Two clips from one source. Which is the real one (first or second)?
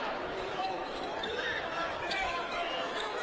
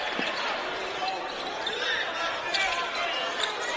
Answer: second